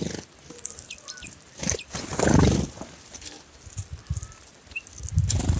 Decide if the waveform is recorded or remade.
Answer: recorded